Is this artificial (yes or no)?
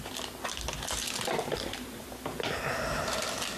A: no